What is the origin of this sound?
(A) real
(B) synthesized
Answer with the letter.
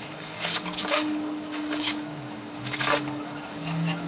B